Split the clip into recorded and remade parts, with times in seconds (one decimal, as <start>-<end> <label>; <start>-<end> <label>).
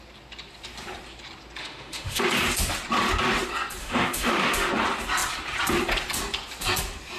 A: 0.0-1.6 recorded; 1.6-2.2 remade; 2.2-3.8 recorded; 3.8-4.7 remade; 4.7-7.2 recorded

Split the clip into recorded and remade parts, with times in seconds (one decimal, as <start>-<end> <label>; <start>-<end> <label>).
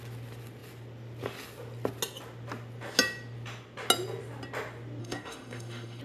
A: 0.0-5.0 recorded; 5.0-6.0 remade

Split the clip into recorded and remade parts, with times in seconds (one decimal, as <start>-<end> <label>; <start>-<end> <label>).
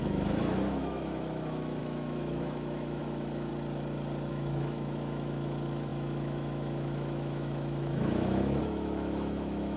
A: 0.0-3.5 remade; 3.5-4.3 recorded; 4.3-9.8 remade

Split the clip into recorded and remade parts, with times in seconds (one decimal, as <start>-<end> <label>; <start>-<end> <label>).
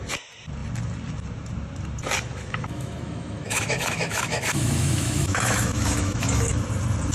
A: 0.0-2.3 recorded; 2.3-6.6 remade; 6.6-7.1 recorded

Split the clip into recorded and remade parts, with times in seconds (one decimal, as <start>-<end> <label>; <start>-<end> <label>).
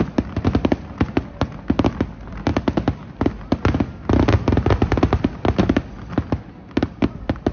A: 0.0-7.5 recorded